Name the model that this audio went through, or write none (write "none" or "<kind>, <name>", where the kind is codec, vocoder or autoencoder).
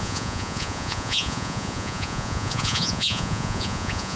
vocoder, Vocos